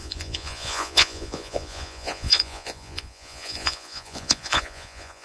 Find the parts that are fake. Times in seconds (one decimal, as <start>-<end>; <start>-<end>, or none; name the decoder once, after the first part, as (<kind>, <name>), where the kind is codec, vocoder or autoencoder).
0.0-5.2 (vocoder, Vocos)